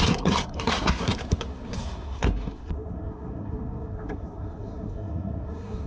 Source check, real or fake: fake